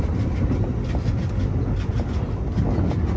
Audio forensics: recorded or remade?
recorded